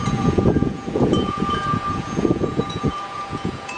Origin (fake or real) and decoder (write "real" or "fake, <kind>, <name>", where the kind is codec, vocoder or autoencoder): fake, vocoder, Vocos